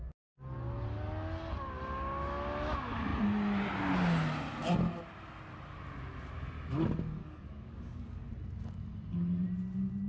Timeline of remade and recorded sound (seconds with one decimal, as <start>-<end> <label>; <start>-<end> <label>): 0.0-7.2 recorded; 7.2-8.3 remade; 8.3-10.1 recorded